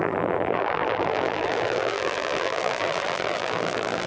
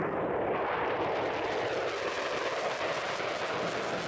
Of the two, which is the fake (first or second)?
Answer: first